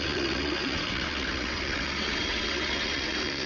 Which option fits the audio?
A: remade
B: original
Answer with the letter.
A